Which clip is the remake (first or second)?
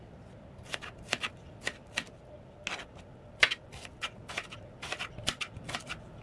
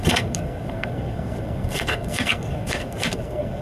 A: second